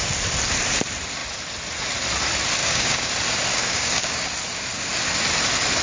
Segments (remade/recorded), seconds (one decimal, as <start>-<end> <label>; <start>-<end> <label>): 0.0-2.6 recorded; 2.6-3.1 remade; 3.1-3.5 recorded; 3.5-4.3 remade; 4.3-5.8 recorded